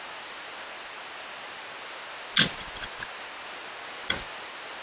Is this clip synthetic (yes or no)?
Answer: no